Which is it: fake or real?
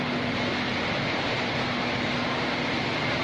real